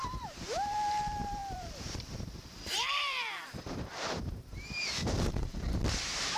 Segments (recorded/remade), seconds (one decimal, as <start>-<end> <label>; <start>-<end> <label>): 0.0-6.4 remade